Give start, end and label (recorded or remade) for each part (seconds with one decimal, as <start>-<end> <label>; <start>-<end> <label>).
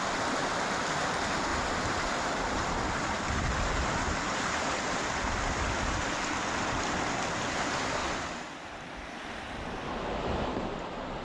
0.0-1.5 recorded; 1.5-3.7 remade; 3.7-11.2 recorded